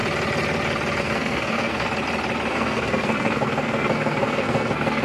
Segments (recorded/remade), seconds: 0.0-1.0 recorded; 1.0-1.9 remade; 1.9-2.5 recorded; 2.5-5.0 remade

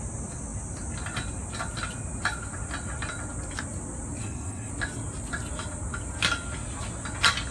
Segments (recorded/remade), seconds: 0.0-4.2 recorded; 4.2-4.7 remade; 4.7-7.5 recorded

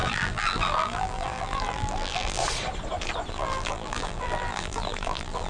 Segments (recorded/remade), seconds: 0.0-2.4 remade; 2.4-3.3 recorded; 3.3-5.5 remade

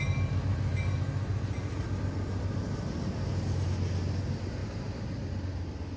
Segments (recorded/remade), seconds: 0.0-6.0 recorded

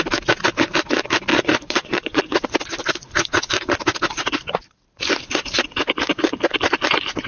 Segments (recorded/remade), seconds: 0.0-1.3 recorded; 1.3-2.2 remade; 2.2-7.3 recorded